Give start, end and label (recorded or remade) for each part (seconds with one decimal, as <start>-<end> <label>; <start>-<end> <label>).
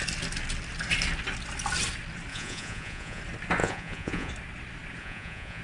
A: 0.0-2.3 recorded; 2.3-3.2 remade; 3.2-3.6 recorded; 3.6-4.3 remade; 4.3-5.0 recorded; 5.0-5.6 remade